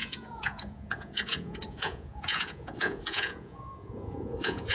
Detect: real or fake fake